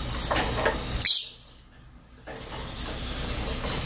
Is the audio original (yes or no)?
yes